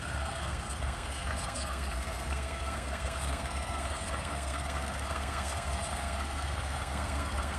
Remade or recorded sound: remade